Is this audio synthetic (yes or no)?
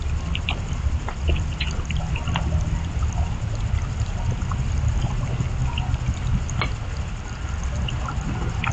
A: no